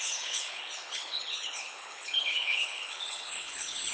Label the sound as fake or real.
fake